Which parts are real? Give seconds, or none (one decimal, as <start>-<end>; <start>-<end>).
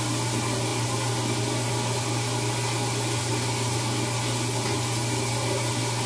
0.0-6.1